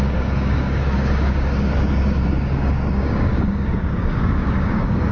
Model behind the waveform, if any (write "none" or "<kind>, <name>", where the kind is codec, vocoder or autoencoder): codec, DAC